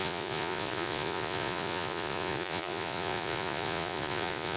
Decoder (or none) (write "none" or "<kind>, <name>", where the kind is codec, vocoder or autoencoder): vocoder, Vocos